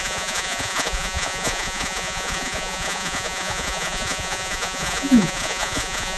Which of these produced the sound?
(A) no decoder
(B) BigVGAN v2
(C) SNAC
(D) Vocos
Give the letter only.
D